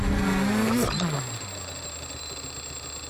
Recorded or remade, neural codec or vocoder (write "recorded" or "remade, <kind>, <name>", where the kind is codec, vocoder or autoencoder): recorded